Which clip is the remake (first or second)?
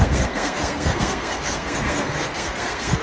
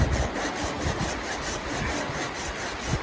first